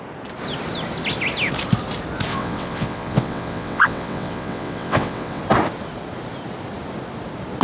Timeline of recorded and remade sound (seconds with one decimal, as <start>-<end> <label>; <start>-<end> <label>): 0.0-2.3 recorded; 2.3-5.4 remade; 5.4-7.6 recorded